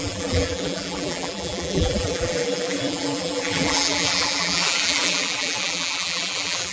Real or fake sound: fake